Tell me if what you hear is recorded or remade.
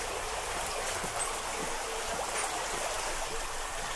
recorded